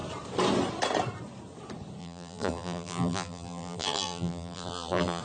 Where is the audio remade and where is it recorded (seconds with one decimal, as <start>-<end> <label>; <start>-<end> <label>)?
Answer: 0.0-2.0 recorded; 2.0-5.2 remade